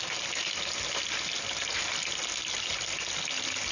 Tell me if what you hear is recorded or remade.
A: recorded